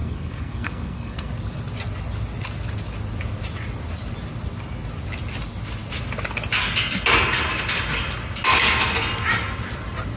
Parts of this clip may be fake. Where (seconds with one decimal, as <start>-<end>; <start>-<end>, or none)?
0.0-1.3